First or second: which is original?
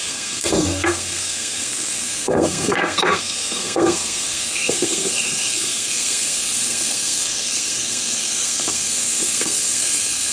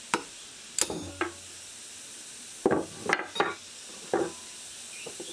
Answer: second